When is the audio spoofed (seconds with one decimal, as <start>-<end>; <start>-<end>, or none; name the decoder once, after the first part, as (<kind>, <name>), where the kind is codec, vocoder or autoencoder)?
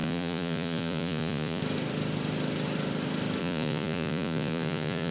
0.0-1.6 (vocoder, Vocos); 3.4-5.1